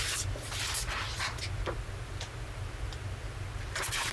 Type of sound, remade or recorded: recorded